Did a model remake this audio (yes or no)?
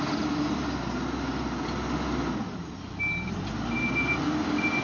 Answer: no